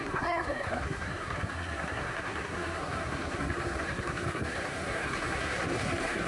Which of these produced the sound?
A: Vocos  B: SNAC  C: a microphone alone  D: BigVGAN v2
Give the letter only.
B